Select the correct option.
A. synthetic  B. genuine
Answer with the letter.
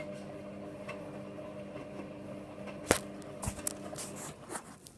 B